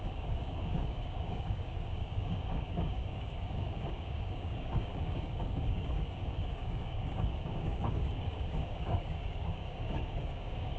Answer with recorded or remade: remade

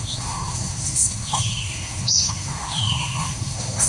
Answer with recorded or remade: remade